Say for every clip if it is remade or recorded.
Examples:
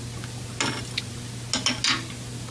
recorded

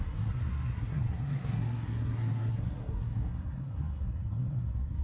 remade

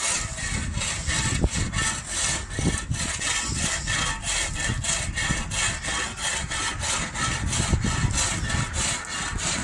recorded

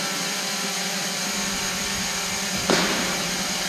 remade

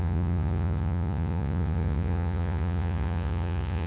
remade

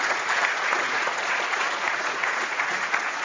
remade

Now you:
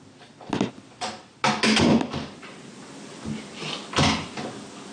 recorded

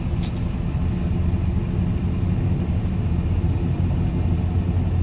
recorded